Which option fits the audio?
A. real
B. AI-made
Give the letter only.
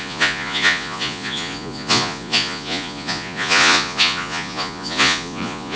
B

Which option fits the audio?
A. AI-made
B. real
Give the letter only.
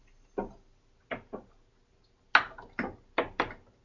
B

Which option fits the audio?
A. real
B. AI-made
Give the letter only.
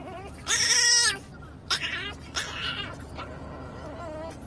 A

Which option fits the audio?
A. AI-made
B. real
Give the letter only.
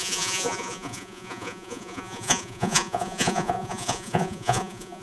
A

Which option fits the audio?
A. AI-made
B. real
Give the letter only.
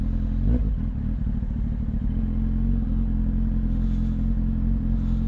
B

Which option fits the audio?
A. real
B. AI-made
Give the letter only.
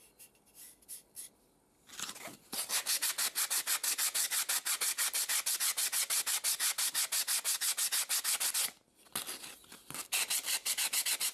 A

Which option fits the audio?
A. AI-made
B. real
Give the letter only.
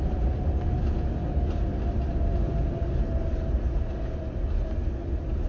B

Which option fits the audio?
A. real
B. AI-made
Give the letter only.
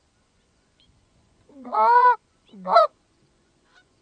B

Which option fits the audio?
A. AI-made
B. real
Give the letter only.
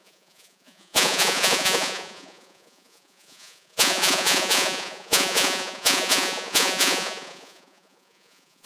A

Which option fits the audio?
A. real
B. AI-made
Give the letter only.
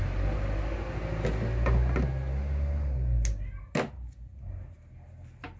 A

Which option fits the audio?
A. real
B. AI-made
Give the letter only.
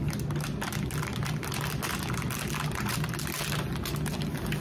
A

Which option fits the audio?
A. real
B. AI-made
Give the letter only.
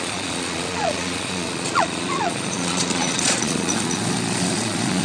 B